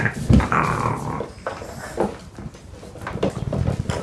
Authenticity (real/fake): real